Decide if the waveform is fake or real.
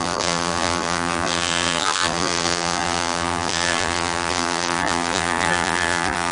fake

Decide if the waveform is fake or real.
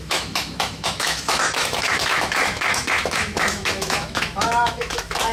fake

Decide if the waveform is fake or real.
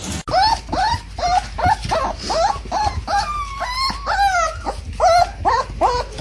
real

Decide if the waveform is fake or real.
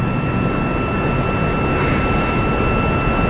real